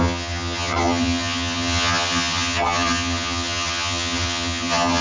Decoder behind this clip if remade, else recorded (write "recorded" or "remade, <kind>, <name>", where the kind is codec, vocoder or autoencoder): remade, vocoder, HiFi-GAN